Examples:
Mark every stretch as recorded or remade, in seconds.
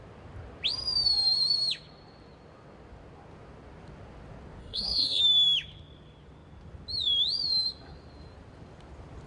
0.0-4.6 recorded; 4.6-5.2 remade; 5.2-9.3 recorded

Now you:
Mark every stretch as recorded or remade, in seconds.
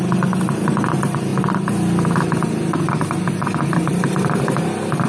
0.0-5.1 recorded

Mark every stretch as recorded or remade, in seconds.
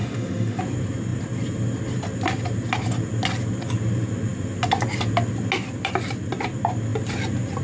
0.0-0.6 remade; 0.6-7.6 recorded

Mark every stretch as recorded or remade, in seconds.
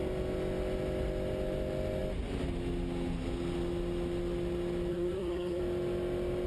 0.0-4.9 recorded; 4.9-5.6 remade; 5.6-6.5 recorded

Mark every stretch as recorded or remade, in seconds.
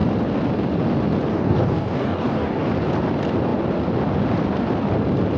0.0-1.3 recorded; 1.3-2.7 remade; 2.7-5.4 recorded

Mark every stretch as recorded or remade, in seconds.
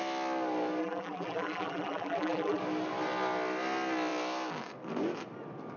0.0-0.8 recorded; 0.8-2.6 remade; 2.6-5.8 recorded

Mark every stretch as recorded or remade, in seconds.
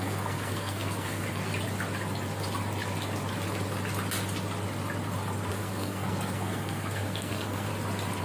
0.0-1.5 remade; 1.5-5.5 recorded; 5.5-7.7 remade; 7.7-8.2 recorded